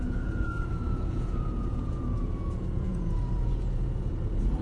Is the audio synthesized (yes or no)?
yes